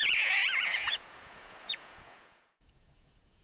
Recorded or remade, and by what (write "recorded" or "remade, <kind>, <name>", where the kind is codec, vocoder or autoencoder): remade, vocoder, Vocos